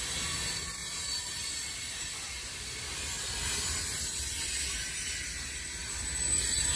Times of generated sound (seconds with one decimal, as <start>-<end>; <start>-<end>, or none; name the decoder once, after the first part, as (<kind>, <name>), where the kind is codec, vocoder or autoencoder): 0.8-4.9 (vocoder, BigVGAN v2); 5.8-6.8